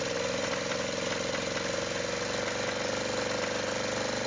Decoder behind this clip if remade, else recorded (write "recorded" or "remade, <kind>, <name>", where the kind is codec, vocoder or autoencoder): recorded